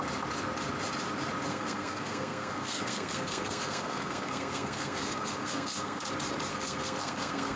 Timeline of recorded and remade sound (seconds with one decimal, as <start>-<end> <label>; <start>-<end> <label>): 0.0-1.5 recorded; 1.5-6.1 remade; 6.1-6.5 recorded; 6.5-7.6 remade